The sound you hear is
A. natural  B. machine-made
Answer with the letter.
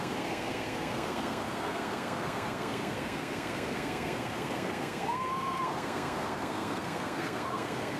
B